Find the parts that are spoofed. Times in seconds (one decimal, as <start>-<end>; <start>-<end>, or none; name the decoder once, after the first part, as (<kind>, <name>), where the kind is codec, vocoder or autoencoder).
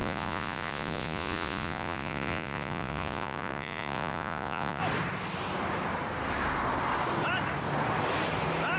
0.0-4.8 (vocoder, Vocos)